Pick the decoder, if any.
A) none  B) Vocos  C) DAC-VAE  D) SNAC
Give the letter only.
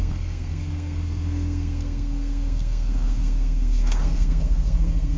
D